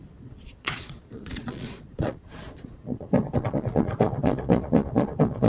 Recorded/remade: remade